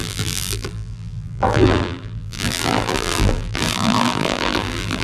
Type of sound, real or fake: fake